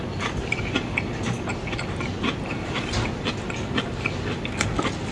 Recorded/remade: recorded